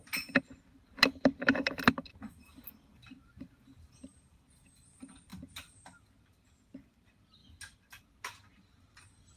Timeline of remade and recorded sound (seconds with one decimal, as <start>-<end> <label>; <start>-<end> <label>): 0.0-9.4 recorded